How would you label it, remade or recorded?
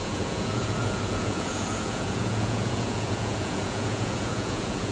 remade